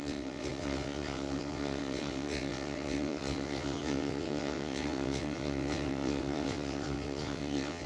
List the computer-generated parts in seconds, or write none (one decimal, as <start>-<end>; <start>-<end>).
0.0-7.9